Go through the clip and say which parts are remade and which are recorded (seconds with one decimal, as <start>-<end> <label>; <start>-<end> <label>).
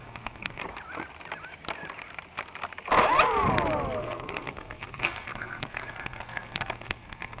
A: 0.0-0.6 remade; 0.6-4.0 recorded; 4.0-7.4 remade